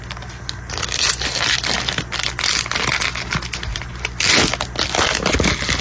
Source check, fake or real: real